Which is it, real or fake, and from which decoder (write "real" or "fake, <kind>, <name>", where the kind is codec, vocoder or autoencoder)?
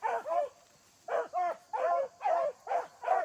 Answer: fake, vocoder, BigVGAN v2